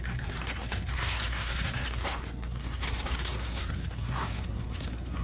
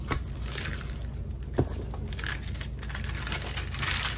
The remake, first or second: first